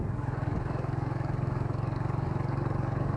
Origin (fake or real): fake